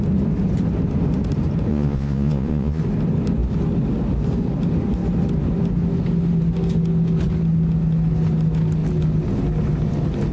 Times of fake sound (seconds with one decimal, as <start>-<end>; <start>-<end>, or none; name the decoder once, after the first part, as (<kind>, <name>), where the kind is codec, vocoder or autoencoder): 1.7-2.8 (vocoder, Vocos)